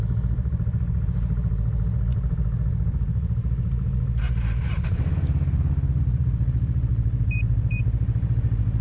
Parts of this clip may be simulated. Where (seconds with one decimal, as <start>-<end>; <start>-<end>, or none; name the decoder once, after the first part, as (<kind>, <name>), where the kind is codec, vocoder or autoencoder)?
6.9-7.8 (vocoder, BigVGAN v2)